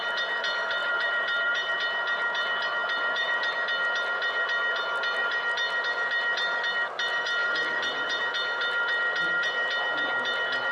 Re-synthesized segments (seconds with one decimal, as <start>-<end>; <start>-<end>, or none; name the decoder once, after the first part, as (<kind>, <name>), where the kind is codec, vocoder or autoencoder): 0.8-1.7 (vocoder, BigVGAN v2); 2.8-3.5; 7.4-8.2